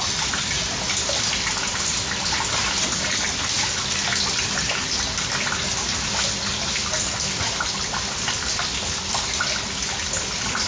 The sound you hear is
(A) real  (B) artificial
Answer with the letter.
A